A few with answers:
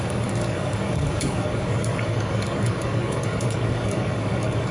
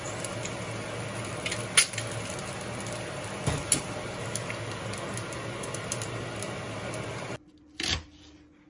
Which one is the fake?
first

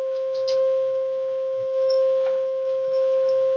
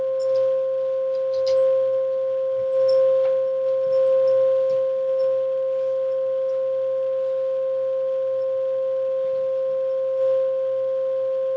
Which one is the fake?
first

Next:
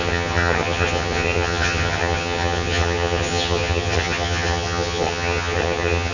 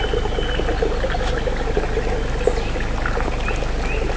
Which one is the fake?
first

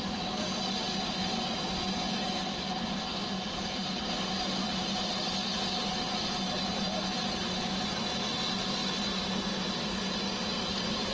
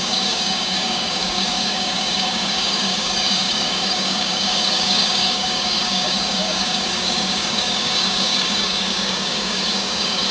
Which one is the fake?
second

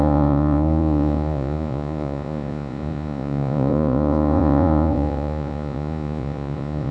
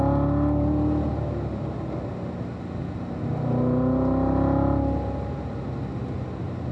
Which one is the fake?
first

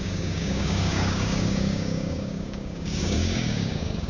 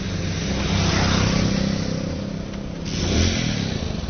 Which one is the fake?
first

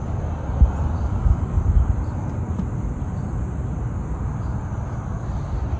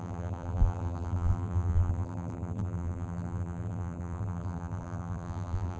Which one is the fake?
second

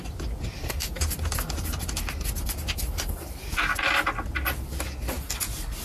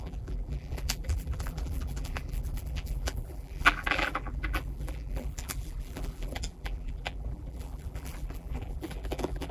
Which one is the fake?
second